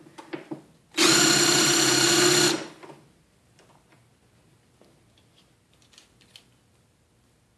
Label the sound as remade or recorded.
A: recorded